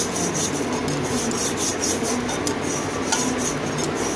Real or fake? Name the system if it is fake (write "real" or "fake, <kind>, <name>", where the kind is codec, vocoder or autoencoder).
real